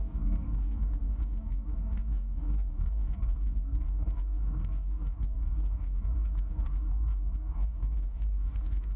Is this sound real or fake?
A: fake